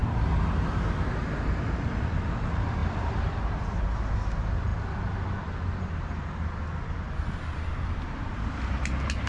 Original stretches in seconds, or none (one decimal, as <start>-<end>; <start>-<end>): 0.0-9.3